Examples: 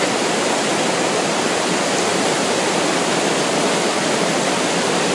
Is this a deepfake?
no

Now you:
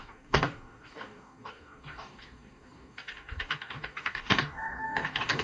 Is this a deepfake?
yes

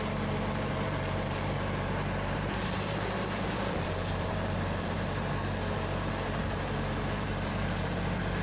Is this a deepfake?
yes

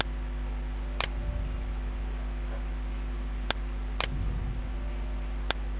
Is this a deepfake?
no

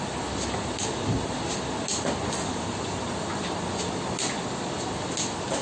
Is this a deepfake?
no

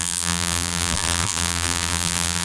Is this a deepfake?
yes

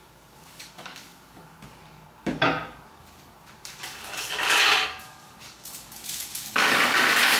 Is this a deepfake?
yes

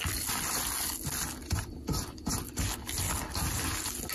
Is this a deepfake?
no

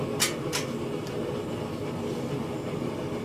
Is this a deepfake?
no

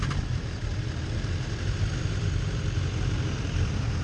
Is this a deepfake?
no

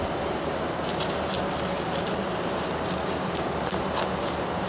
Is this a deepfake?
yes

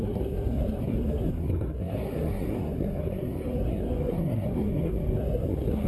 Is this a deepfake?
yes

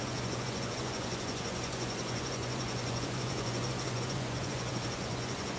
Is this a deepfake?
yes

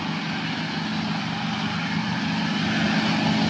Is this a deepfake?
no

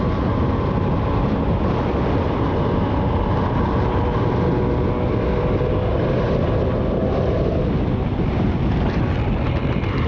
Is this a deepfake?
no